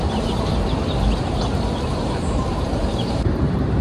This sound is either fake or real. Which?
fake